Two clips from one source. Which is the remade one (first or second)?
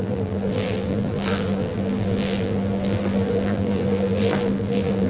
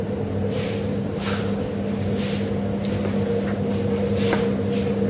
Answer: first